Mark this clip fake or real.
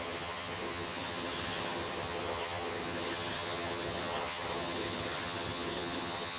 fake